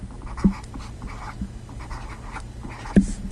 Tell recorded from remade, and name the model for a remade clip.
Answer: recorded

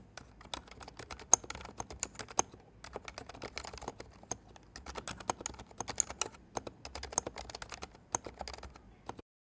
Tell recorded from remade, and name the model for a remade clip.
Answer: recorded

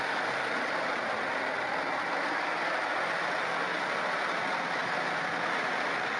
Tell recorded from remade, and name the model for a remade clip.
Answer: recorded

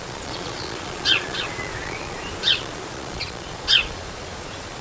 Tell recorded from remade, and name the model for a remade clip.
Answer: remade, vocoder, Vocos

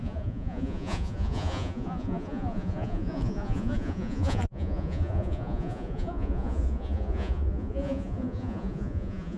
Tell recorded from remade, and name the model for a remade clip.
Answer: remade, vocoder, Vocos